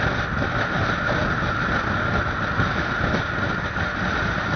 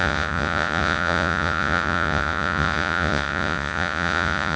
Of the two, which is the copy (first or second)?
second